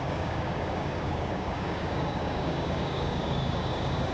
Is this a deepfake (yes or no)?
yes